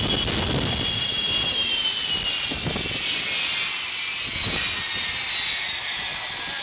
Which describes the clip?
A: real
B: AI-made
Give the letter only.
A